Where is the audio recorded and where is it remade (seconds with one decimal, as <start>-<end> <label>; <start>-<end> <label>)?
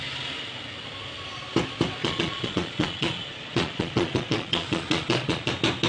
0.0-2.0 recorded; 2.0-5.5 remade; 5.5-5.9 recorded